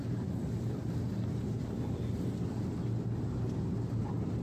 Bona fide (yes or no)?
yes